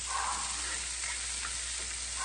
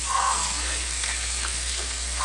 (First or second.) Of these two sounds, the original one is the first